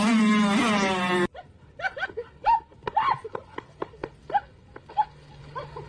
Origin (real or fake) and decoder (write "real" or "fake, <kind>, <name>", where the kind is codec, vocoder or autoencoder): real